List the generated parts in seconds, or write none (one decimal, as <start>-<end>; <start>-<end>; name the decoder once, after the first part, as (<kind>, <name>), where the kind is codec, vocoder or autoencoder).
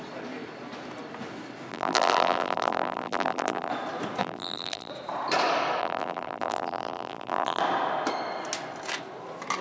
1.7-3.7 (vocoder, BigVGAN v2); 4.2-4.9; 5.8-7.6